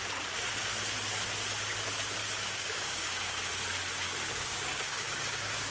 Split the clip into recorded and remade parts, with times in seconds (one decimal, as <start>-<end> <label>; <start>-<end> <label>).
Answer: 0.0-2.2 recorded; 2.2-3.5 remade; 3.5-3.9 recorded; 3.9-5.7 remade